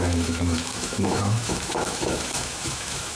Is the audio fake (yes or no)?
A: yes